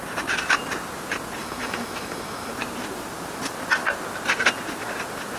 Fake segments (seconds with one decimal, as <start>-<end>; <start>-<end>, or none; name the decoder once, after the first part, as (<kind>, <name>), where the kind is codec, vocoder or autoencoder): 1.4-2.5 (autoencoder, DAC-VAE)